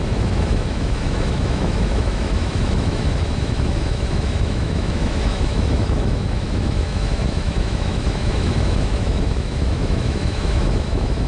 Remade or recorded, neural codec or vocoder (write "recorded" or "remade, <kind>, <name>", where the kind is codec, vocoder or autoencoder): remade, autoencoder, DAC-VAE